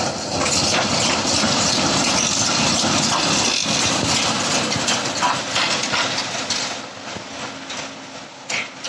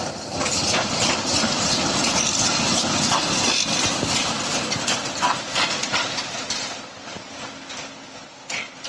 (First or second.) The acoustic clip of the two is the first